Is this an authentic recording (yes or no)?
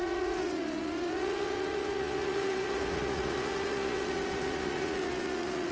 no